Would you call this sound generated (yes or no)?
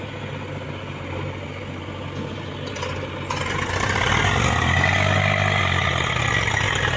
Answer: no